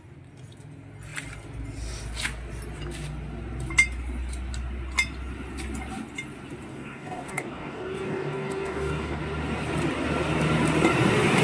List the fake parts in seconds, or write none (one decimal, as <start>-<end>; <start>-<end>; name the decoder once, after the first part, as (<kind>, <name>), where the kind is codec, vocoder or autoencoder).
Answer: 6.7-9.2 (codec, DAC)